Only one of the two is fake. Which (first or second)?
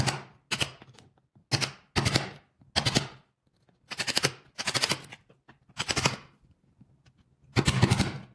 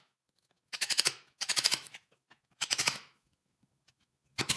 second